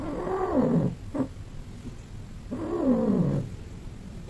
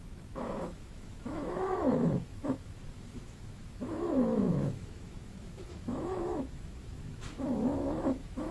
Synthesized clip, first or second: second